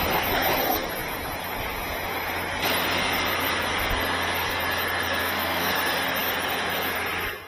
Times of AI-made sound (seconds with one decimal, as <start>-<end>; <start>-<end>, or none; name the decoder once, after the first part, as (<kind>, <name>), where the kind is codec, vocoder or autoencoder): 5.2-5.7 (codec, SNAC)